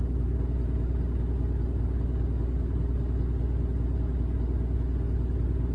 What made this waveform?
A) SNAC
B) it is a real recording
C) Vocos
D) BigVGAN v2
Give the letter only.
B